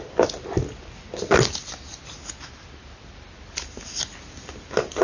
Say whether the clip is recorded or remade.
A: recorded